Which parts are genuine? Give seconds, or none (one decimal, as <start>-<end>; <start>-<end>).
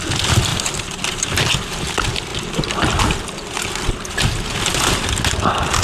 0.0-0.5; 1.9-5.8